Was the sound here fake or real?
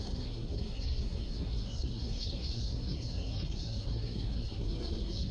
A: fake